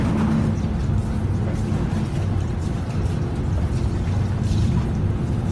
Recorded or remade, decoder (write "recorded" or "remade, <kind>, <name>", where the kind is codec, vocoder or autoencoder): recorded